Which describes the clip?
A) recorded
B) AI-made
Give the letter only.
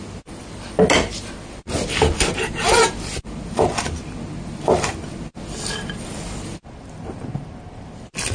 A